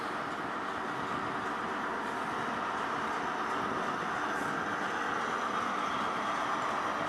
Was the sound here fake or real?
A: real